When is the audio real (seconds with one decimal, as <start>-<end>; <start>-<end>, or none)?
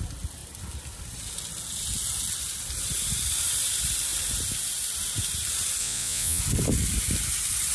0.0-5.8; 6.4-7.7